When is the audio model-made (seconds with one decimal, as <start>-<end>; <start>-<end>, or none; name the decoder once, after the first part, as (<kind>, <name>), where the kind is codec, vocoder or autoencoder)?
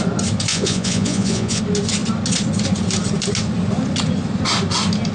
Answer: 0.5-1.6 (vocoder, Vocos)